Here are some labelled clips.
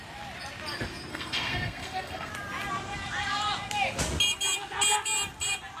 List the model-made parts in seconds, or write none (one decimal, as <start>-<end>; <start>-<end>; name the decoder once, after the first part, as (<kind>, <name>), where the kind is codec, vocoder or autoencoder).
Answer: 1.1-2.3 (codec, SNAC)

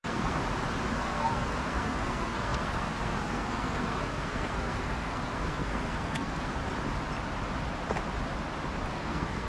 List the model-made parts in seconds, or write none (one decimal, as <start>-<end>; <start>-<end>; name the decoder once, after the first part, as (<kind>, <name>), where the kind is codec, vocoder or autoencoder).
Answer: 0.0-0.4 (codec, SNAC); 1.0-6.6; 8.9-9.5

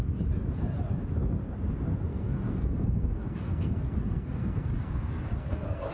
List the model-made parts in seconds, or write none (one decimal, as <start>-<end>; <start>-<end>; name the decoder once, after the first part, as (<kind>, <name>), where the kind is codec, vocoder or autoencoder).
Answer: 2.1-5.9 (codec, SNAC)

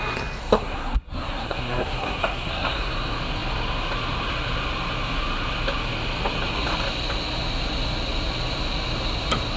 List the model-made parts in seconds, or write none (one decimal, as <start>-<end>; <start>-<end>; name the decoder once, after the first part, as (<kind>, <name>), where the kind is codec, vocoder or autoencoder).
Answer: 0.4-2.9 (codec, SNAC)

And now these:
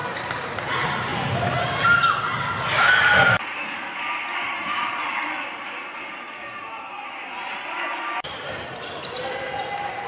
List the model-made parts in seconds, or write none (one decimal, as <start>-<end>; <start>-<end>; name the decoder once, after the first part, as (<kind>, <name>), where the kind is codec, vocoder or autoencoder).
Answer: none

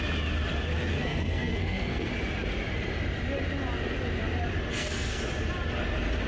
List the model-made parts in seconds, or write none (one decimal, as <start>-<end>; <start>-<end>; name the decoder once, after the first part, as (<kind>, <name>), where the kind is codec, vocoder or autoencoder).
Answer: 0.9-2.1 (codec, SNAC); 4.7-5.2

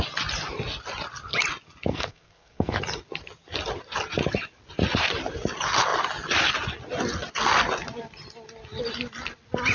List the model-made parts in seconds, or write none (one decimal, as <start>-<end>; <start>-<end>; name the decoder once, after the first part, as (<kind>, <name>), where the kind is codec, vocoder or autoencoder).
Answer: 1.9-2.8 (codec, SNAC)